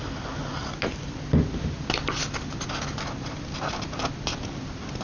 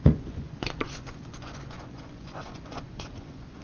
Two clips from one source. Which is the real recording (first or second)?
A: first